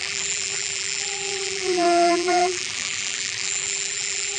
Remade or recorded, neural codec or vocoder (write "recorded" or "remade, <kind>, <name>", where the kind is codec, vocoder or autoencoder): remade, vocoder, BigVGAN v2